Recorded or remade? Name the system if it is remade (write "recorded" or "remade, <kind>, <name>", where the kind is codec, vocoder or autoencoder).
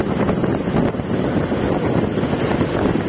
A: recorded